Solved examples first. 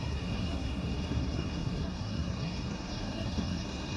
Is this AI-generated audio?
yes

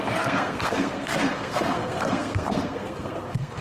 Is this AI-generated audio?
yes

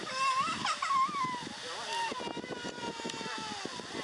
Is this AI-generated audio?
no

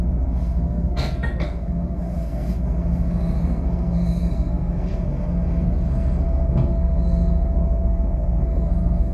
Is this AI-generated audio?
yes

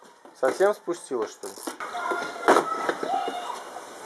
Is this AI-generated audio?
no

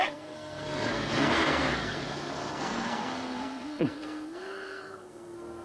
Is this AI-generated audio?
yes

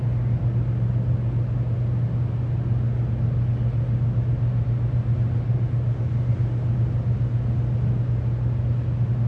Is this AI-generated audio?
no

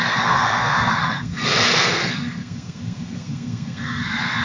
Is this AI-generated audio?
yes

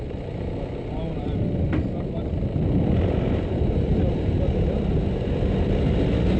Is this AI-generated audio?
no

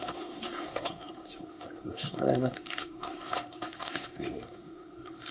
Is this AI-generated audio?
yes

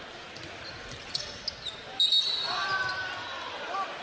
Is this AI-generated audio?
no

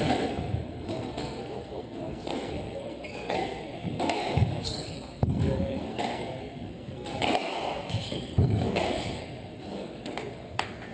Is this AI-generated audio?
yes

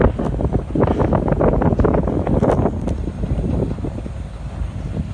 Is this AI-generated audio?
no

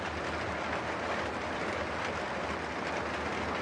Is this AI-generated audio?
no